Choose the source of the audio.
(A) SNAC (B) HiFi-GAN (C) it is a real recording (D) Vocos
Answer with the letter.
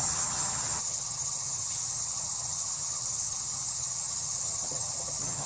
B